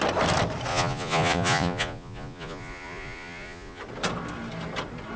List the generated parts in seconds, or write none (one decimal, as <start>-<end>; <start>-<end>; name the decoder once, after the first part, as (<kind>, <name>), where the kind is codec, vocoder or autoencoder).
0.7-3.8 (vocoder, Vocos)